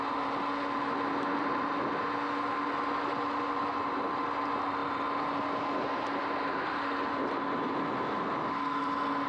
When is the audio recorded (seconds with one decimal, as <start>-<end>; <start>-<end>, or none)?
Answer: 0.0-9.3